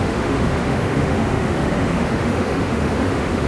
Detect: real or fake fake